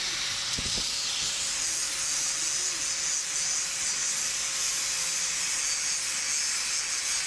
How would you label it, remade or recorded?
recorded